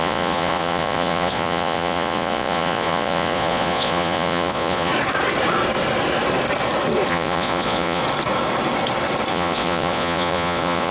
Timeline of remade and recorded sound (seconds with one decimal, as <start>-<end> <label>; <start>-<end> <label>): 0.0-4.9 remade; 4.9-7.1 recorded; 7.1-8.0 remade; 8.0-9.3 recorded; 9.3-10.9 remade